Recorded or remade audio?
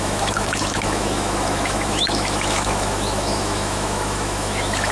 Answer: remade